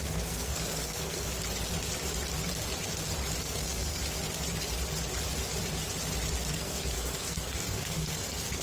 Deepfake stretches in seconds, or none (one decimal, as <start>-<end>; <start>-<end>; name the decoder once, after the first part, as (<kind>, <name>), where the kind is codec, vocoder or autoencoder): 0.0-1.3 (codec, SNAC); 3.4-4.0; 6.5-8.6